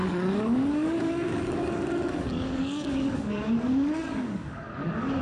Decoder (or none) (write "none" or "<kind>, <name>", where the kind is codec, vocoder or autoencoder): codec, DAC